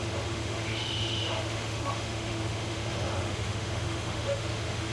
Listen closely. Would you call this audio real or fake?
fake